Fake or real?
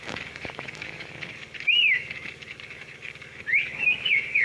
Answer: fake